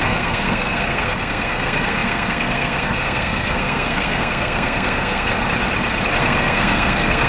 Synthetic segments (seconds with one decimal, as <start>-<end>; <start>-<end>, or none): 0.0-5.3; 6.2-7.3